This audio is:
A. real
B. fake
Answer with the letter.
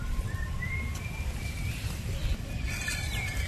B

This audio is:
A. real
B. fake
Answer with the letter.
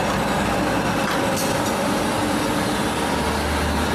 A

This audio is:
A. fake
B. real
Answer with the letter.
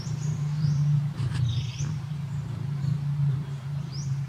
A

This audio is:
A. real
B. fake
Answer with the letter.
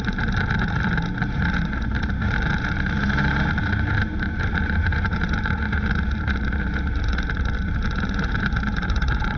B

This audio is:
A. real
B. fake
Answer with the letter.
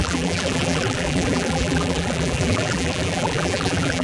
B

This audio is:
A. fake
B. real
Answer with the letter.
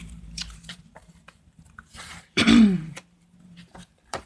A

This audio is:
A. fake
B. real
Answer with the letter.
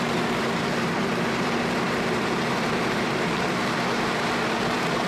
A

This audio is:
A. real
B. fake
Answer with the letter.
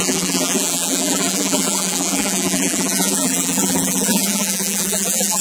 B